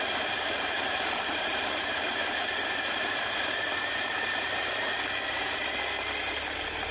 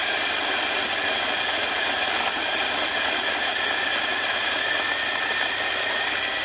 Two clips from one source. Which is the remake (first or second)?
first